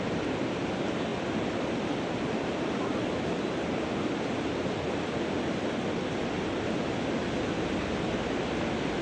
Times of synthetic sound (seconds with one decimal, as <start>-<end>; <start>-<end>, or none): none